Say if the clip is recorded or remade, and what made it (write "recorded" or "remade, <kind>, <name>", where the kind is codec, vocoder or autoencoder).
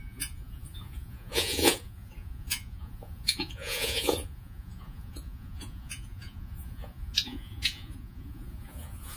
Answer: remade, vocoder, Vocos